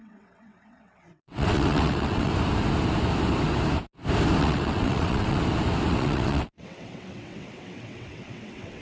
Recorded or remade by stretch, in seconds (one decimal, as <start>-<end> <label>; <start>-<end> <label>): 0.0-2.3 remade; 2.3-4.4 recorded; 4.4-5.4 remade; 5.4-5.9 recorded; 5.9-8.8 remade